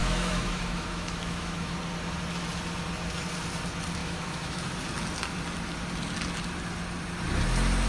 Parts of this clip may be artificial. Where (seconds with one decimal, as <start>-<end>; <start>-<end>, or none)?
0.0-1.7; 4.0-4.6